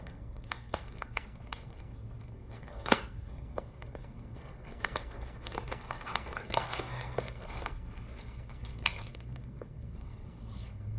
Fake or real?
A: fake